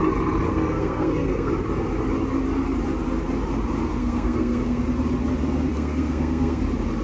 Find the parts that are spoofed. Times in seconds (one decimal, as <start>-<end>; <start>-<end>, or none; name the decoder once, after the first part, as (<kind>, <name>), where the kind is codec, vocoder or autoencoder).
0.5-1.5 (codec, SNAC); 4.0-4.8; 5.7-6.6